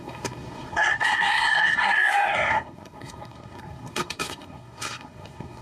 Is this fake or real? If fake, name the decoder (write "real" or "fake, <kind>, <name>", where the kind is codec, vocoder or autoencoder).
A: fake, codec, SNAC